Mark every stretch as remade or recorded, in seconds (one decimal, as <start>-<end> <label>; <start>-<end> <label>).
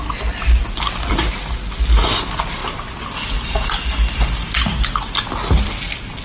0.0-6.2 recorded